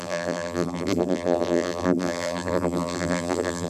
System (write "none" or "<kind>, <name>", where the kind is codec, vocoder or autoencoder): vocoder, BigVGAN v2